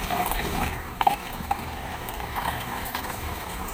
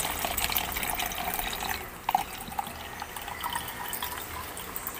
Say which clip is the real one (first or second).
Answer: second